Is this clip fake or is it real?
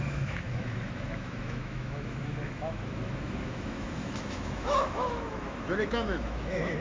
fake